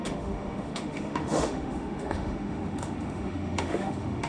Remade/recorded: remade